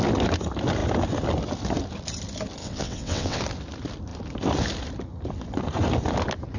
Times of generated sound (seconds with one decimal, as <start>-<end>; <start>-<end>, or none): 2.6-3.4